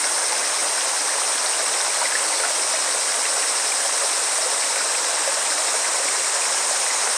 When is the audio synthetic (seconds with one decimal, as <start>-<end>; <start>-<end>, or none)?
none